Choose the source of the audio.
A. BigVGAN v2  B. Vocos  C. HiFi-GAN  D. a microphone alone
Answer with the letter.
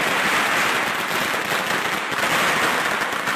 D